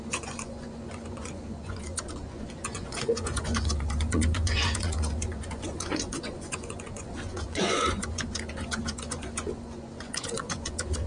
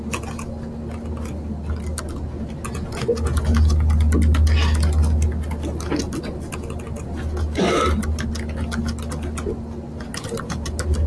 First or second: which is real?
second